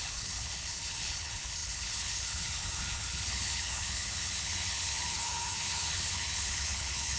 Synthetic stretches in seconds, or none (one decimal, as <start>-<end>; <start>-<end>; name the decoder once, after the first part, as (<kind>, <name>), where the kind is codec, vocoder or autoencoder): 0.0-7.2 (codec, HILCodec)